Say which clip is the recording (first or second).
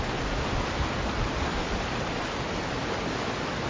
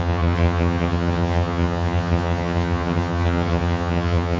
first